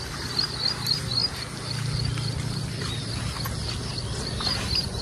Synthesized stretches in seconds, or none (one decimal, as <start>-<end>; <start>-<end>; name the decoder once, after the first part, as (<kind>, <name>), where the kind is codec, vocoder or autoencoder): none